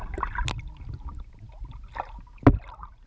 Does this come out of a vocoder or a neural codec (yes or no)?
no